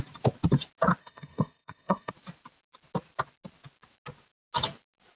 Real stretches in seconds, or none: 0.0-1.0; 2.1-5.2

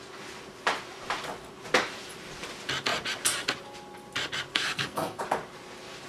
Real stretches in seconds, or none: 0.0-4.5; 5.2-6.1

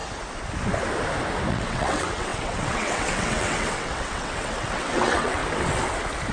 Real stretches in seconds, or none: 0.0-1.5; 5.4-6.3